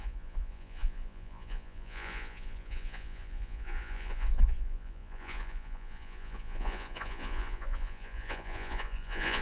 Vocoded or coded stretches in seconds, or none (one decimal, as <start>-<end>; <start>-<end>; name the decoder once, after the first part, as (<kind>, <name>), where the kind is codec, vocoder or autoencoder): 0.0-9.4 (vocoder, Vocos)